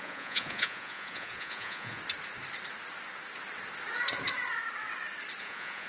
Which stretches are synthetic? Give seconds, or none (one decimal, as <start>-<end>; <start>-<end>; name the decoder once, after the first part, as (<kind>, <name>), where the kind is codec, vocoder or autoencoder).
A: 0.0-2.0 (vocoder, Vocos); 5.4-5.9